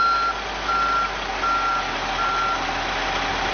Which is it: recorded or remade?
recorded